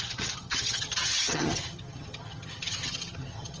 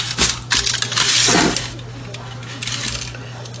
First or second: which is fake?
first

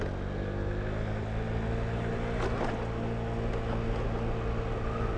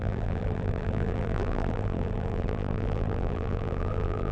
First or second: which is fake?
second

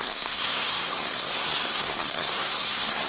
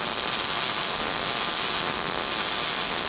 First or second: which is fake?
first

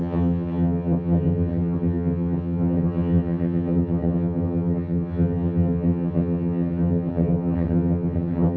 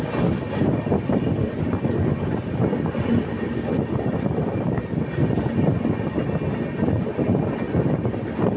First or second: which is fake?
first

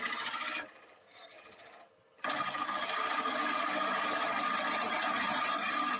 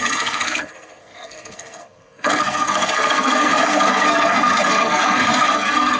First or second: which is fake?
second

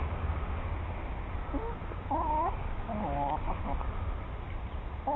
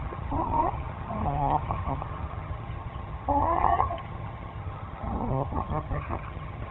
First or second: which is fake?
second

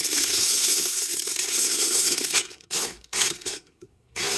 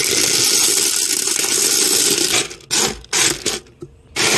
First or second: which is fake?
first